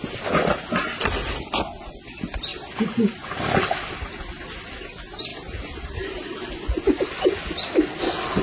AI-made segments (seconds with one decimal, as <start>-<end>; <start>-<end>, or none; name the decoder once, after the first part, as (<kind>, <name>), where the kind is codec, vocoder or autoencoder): 5.3-6.5 (vocoder, BigVGAN v2)